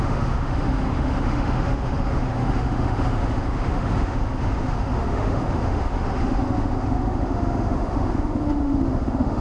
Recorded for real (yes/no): no